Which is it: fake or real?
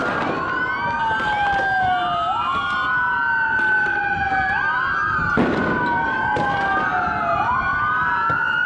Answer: real